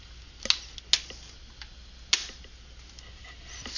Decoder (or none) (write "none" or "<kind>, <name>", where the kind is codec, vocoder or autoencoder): none